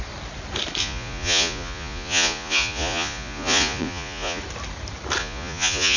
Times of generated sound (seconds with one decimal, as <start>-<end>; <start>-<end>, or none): 0.8-4.4; 5.2-6.0